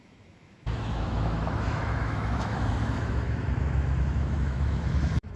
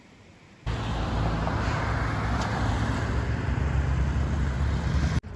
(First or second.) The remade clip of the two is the first